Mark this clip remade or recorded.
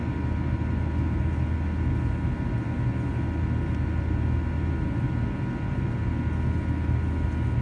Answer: recorded